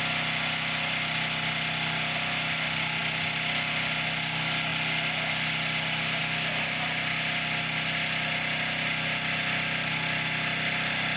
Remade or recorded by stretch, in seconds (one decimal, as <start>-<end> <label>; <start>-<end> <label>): 0.0-11.2 recorded